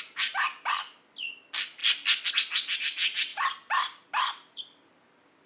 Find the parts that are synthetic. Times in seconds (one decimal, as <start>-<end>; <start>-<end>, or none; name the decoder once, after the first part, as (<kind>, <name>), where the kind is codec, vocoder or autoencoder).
1.8-2.3 (vocoder, BigVGAN v2); 3.3-4.6